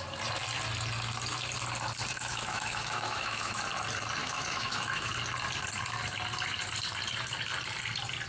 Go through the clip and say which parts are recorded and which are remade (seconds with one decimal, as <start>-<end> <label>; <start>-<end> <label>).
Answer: 0.0-2.1 recorded; 2.1-3.6 remade; 3.6-4.2 recorded; 4.2-5.1 remade; 5.1-8.3 recorded